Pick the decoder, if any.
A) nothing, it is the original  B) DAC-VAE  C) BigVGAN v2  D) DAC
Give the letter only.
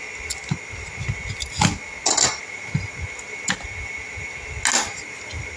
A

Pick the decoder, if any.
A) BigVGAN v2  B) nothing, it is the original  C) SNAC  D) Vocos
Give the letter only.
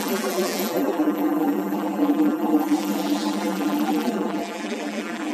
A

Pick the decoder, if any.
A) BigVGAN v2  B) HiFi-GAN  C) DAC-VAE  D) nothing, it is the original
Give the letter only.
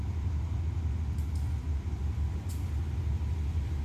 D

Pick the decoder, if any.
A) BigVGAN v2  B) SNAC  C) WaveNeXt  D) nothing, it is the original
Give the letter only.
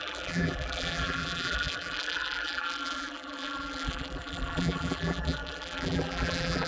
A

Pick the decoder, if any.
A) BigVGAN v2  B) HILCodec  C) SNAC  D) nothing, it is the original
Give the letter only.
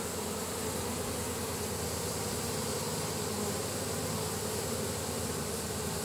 A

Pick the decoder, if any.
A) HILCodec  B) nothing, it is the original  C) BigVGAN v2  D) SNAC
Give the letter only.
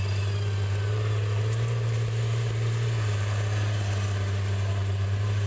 B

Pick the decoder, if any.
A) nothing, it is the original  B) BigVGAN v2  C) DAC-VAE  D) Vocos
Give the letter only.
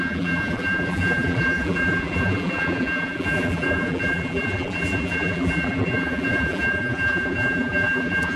B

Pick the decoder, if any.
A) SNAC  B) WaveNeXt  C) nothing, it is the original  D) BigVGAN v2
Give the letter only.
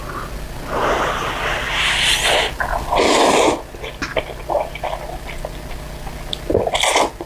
C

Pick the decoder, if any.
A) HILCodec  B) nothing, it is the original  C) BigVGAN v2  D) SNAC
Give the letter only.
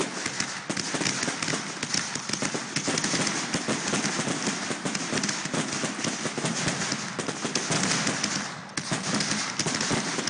B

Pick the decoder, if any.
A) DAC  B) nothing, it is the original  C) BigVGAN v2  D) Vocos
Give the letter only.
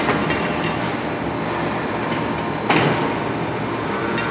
C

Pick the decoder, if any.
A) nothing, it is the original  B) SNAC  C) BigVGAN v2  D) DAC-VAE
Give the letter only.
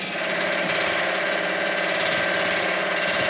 C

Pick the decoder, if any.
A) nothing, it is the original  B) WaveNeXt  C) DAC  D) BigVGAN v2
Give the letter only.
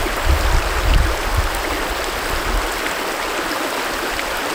A